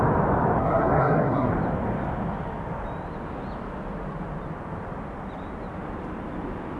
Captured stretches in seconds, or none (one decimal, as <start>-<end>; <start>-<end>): 0.0-0.6; 1.5-6.8